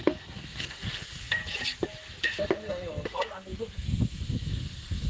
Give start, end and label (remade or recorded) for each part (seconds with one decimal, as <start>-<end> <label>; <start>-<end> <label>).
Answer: 0.0-1.4 remade; 1.4-2.2 recorded; 2.2-5.1 remade